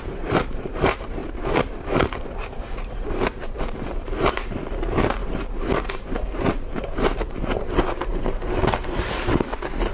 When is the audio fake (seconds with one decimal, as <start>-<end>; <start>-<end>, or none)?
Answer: 0.0-1.2; 1.8-9.9